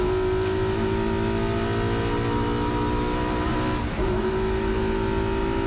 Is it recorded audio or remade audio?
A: recorded